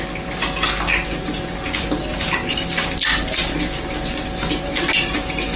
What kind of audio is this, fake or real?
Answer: real